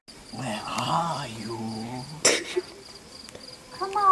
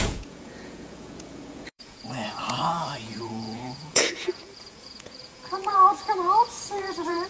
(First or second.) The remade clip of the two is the second